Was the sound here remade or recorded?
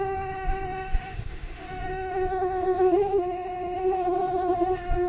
remade